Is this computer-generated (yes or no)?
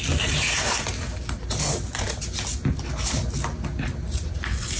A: no